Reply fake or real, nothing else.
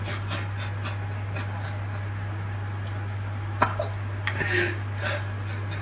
real